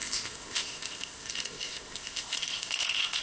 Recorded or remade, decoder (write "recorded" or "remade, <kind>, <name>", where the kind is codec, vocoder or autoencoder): remade, codec, ZipCodec